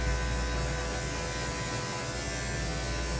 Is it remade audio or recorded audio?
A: recorded